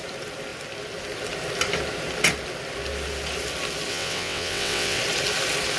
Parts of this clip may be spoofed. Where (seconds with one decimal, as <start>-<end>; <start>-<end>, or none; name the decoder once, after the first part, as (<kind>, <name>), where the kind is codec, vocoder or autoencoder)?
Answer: 3.9-5.0 (vocoder, WaveNeXt)